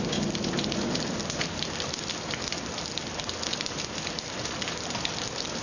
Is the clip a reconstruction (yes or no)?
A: no